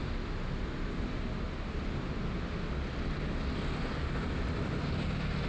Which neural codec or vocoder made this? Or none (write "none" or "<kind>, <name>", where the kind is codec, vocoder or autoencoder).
none